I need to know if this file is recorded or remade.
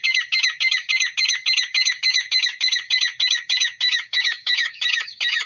remade